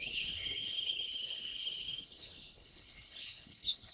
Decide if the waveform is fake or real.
fake